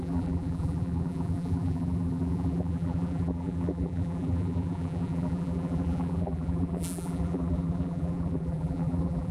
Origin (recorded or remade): remade